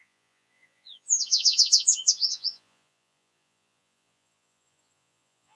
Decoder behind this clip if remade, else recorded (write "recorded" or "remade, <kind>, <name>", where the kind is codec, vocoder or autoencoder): remade, vocoder, Vocos